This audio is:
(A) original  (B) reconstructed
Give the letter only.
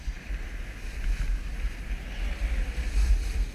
A